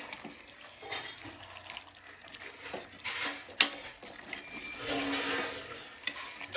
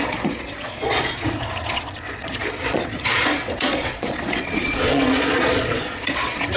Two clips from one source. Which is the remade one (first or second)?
second